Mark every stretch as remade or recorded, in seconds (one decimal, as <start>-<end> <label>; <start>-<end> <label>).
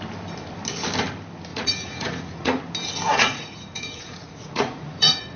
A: 0.0-1.5 recorded; 1.5-2.6 remade; 2.6-3.1 recorded; 3.1-5.4 remade